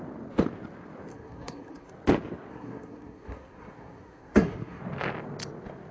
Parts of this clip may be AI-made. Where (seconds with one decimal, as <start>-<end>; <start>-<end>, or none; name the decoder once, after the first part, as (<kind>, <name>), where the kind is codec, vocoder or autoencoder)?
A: 1.1-1.9 (codec, SNAC); 2.5-4.8